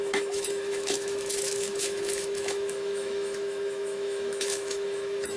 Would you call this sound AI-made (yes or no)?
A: yes